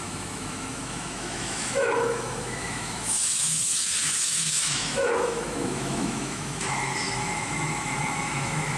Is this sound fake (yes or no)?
yes